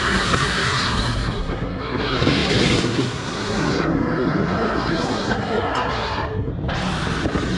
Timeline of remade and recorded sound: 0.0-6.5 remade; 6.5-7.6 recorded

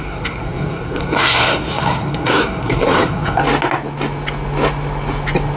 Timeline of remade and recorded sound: 0.0-3.4 remade; 3.4-5.6 recorded

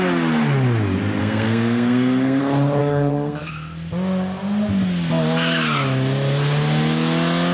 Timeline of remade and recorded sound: 0.0-1.2 recorded; 1.2-2.4 remade; 2.4-2.8 recorded; 2.8-3.5 remade; 3.5-7.5 recorded